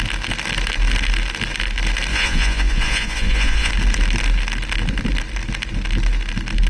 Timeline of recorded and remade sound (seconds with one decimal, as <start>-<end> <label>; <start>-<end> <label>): 0.0-2.1 recorded; 2.1-3.7 remade; 3.7-6.7 recorded